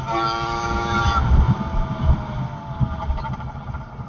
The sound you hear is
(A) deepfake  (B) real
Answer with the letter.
B